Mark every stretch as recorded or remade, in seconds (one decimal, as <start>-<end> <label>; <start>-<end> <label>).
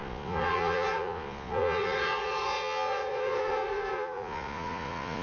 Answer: 0.0-5.2 remade